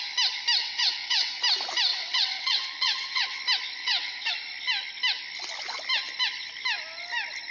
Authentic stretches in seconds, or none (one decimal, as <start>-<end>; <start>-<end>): 0.0-0.6; 1.3-1.9; 3.4-3.8; 4.3-7.5